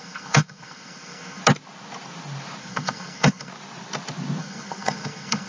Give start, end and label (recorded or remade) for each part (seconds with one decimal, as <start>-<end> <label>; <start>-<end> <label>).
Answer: 0.0-1.4 remade; 1.4-2.6 recorded; 2.6-3.5 remade; 3.5-4.4 recorded; 4.4-5.5 remade